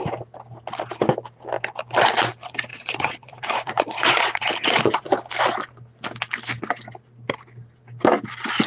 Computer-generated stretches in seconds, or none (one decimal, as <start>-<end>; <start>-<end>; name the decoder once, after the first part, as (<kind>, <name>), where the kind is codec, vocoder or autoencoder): 2.7-5.1 (vocoder, Vocos)